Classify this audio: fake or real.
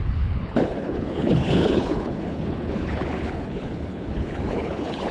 fake